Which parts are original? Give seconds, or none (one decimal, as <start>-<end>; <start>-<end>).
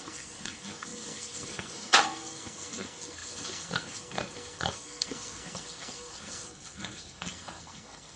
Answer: none